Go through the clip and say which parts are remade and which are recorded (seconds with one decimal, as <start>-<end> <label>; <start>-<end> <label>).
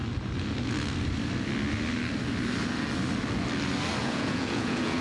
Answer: 0.0-4.0 recorded; 4.0-5.0 remade